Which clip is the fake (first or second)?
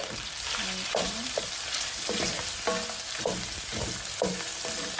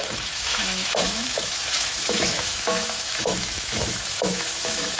second